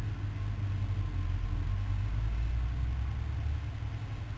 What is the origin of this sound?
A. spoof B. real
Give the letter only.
B